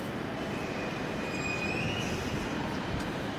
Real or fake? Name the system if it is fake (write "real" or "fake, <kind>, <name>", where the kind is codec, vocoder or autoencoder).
fake, vocoder, BigVGAN v2